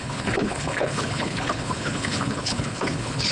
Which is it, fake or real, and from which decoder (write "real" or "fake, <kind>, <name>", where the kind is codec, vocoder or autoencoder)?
fake, codec, HILCodec